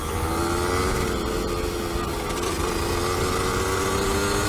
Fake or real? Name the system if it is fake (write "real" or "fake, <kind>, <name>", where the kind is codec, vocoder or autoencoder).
real